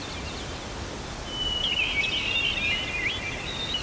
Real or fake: real